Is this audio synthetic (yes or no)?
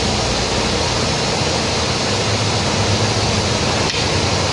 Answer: no